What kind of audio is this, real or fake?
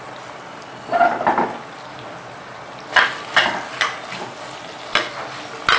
real